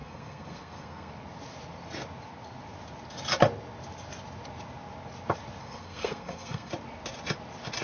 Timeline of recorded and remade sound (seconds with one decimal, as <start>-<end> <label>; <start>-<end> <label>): 0.0-1.1 remade; 1.1-5.6 recorded; 5.6-6.7 remade; 6.7-7.8 recorded

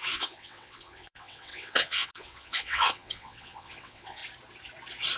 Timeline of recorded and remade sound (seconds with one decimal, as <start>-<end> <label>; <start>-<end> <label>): 0.0-4.2 remade; 4.2-5.2 recorded

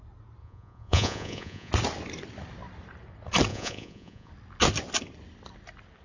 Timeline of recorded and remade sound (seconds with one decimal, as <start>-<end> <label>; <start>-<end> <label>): 0.0-0.4 recorded; 0.4-1.7 remade; 1.7-3.5 recorded; 3.5-4.3 remade; 4.3-6.0 recorded

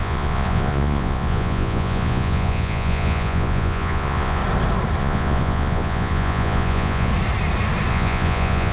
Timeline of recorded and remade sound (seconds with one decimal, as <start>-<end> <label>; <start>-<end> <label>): 0.0-4.4 remade; 4.4-5.0 recorded; 5.0-7.1 remade; 7.1-7.9 recorded; 7.9-8.7 remade

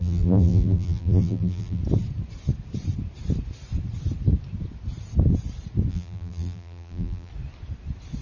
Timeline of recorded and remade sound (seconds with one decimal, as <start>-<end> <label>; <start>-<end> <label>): 0.0-1.8 remade; 1.8-5.9 recorded; 5.9-7.3 remade; 7.3-8.2 recorded